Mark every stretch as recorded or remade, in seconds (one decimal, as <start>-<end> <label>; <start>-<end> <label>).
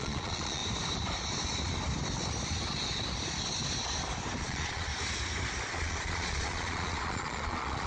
0.0-0.6 remade; 0.6-4.4 recorded; 4.4-4.9 remade; 4.9-5.7 recorded; 5.7-7.9 remade